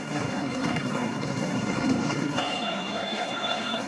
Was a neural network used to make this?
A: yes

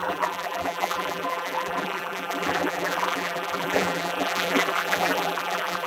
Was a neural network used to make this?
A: yes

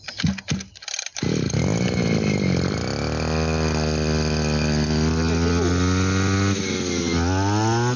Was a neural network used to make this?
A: no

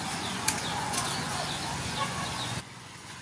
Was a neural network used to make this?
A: yes